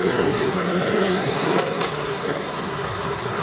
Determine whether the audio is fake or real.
fake